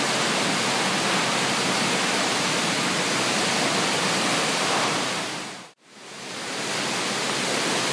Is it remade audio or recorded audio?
recorded